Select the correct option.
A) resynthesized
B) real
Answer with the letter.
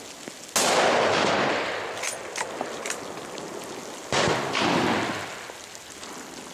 B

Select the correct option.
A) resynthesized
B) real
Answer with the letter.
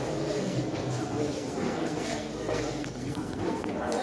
A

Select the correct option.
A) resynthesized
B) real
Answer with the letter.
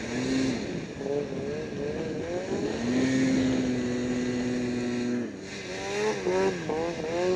B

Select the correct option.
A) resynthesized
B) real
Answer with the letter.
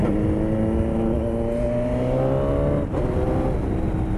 B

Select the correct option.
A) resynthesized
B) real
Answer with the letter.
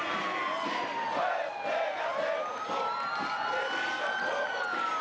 B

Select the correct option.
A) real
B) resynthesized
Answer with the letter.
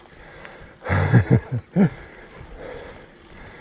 A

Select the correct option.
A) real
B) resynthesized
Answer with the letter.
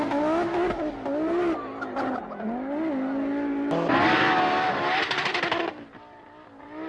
A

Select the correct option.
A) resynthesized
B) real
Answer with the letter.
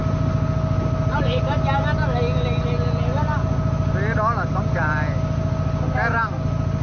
B